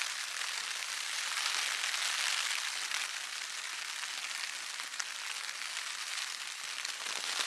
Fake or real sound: real